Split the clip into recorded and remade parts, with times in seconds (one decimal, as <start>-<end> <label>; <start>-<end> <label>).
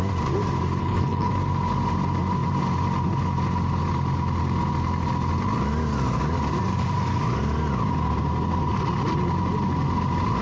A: 0.0-0.8 recorded; 0.8-1.3 remade; 1.3-10.4 recorded